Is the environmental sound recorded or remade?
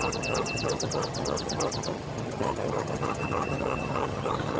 remade